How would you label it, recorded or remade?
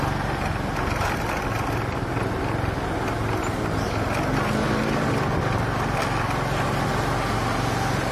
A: recorded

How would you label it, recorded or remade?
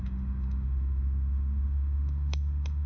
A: remade